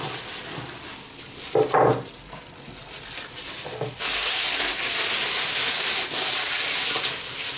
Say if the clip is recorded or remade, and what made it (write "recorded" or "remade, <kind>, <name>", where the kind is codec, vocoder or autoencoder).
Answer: recorded